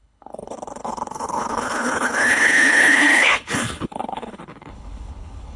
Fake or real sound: fake